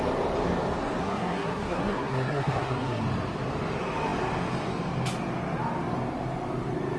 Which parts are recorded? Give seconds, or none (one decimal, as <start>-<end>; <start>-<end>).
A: 0.0-1.0; 3.0-7.0